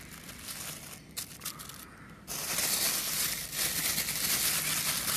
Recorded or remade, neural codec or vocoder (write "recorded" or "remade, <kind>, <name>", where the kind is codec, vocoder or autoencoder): recorded